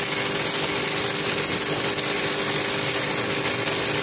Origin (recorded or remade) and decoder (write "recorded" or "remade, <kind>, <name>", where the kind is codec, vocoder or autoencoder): recorded